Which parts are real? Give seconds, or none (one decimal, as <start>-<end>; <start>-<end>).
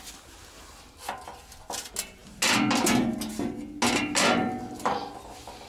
0.0-5.7